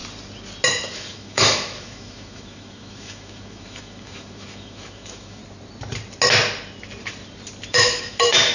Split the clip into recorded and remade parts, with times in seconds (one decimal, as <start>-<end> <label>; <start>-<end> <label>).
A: 0.0-0.7 recorded; 0.7-5.4 remade; 5.4-7.7 recorded; 7.7-8.5 remade